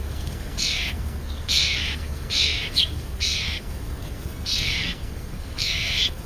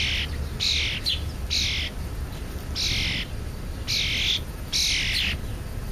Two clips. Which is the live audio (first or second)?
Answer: second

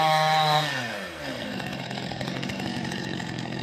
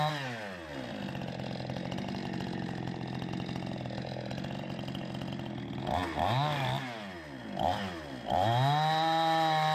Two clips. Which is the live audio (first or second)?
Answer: second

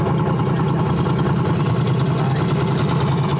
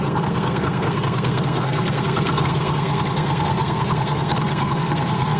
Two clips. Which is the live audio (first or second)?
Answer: first